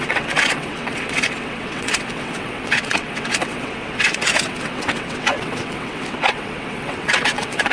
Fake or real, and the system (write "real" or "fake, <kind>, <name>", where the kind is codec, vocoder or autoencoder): fake, vocoder, WaveNeXt